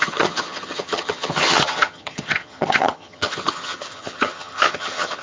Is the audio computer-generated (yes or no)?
yes